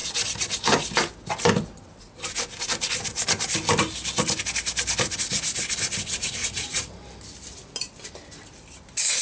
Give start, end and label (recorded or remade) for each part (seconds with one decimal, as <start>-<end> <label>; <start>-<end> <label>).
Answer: 0.0-6.4 recorded; 6.4-7.0 remade; 7.0-9.2 recorded